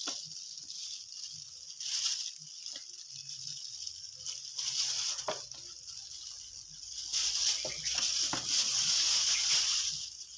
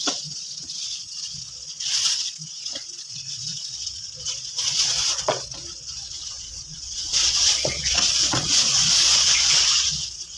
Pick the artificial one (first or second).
second